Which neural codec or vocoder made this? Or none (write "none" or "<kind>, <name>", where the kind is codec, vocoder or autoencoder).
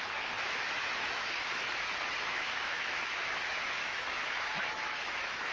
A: autoencoder, DAC-VAE